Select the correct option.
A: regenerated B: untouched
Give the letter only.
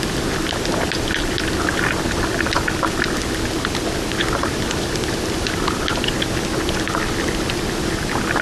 B